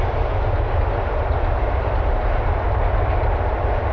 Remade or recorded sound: recorded